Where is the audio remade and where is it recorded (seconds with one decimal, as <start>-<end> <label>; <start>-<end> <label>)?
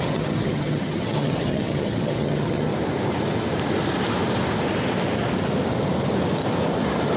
0.0-2.7 remade; 2.7-7.2 recorded